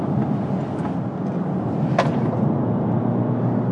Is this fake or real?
real